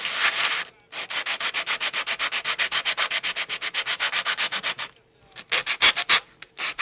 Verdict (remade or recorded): recorded